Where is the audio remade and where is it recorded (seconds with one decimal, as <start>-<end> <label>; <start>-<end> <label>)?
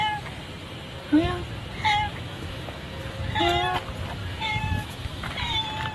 0.0-2.1 recorded; 2.1-3.2 remade; 3.2-4.2 recorded; 4.2-5.3 remade; 5.3-5.9 recorded